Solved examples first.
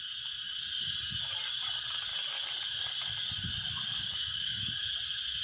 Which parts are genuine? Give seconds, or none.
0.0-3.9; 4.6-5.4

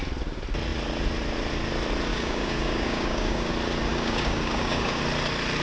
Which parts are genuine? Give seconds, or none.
0.0-2.1; 3.5-3.9; 5.0-5.6

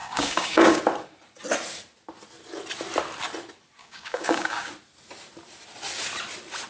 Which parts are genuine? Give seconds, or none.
0.8-3.8; 4.7-6.7

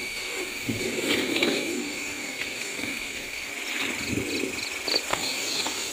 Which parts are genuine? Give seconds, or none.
3.5-5.1

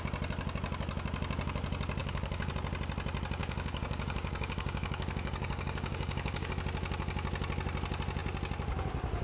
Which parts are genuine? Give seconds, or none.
0.0-2.0; 2.5-3.4; 6.5-9.2